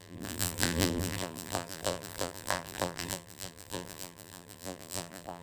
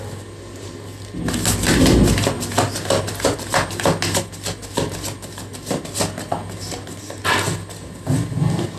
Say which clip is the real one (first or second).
second